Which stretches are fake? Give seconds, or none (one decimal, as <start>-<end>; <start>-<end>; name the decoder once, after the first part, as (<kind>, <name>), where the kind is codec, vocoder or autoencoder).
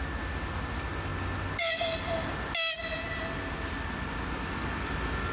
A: none